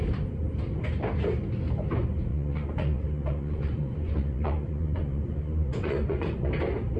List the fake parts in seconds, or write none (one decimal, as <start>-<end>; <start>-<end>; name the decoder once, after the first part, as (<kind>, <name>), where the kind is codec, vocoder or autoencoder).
2.3-6.5 (vocoder, Vocos)